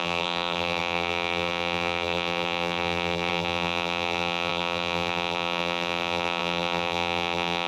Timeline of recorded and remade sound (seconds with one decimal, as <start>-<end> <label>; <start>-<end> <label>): 0.0-7.7 remade